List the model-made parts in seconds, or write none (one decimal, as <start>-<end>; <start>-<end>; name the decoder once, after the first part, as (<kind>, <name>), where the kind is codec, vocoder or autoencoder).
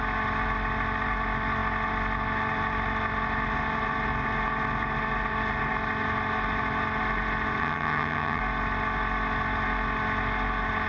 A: 7.6-8.4 (vocoder, HiFi-GAN)